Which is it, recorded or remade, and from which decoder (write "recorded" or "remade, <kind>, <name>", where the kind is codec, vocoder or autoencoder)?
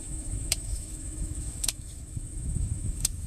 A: remade, autoencoder, DAC-VAE